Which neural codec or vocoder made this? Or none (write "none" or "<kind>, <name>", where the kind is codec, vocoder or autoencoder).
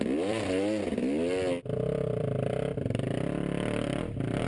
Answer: vocoder, BigVGAN v2